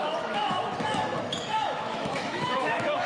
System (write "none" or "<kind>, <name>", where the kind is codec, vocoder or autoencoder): autoencoder, DAC-VAE